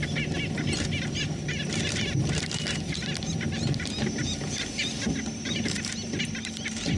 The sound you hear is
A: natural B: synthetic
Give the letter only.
A